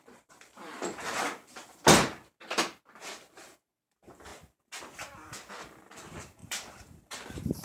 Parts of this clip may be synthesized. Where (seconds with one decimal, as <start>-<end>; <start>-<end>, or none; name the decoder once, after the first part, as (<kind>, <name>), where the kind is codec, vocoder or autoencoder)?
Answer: 0.0-1.6 (vocoder, BigVGAN v2); 3.3-4.3; 5.5-7.6